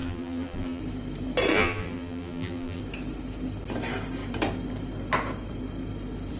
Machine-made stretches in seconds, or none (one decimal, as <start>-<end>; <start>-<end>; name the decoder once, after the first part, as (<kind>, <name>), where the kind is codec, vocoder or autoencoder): 0.0-0.8 (vocoder, BigVGAN v2); 1.5-2.8